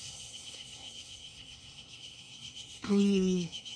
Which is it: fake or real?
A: fake